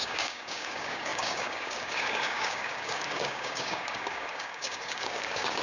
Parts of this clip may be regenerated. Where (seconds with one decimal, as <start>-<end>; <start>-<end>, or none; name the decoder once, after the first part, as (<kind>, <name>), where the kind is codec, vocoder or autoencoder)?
0.0-5.6 (codec, DAC)

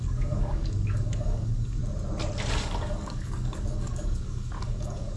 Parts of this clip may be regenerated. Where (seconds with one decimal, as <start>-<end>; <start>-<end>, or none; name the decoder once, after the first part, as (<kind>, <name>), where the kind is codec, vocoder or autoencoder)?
0.0-1.8 (codec, DAC); 2.5-5.2

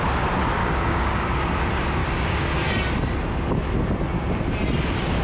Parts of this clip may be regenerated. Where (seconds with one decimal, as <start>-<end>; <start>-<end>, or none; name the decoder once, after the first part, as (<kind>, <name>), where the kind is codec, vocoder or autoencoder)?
0.6-1.3 (codec, DAC); 2.0-2.7

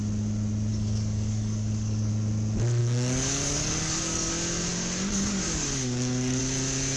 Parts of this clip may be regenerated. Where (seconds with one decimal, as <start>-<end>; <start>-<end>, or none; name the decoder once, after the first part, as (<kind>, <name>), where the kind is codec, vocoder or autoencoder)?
0.7-2.1 (codec, DAC); 2.8-4.3; 4.7-6.4

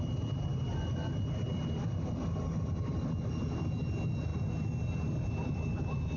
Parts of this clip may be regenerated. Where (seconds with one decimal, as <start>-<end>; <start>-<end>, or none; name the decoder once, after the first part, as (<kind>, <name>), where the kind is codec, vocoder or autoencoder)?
none

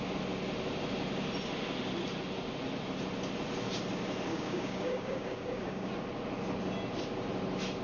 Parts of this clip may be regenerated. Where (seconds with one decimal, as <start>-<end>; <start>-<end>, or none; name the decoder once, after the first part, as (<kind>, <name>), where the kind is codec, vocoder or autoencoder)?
4.3-5.9 (codec, DAC)

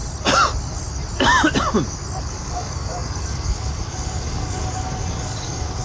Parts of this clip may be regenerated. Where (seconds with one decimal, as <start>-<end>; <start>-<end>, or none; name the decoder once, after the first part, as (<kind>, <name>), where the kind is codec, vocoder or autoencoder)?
2.2-5.8 (codec, DAC)